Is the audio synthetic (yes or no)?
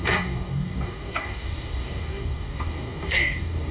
yes